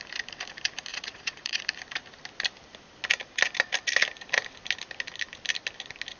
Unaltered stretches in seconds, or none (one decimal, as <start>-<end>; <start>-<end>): 0.0-0.9; 1.6-6.2